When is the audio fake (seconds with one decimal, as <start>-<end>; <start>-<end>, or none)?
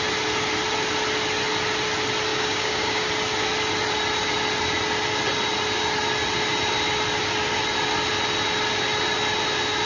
2.3-3.1